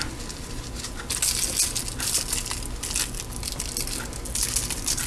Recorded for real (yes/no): yes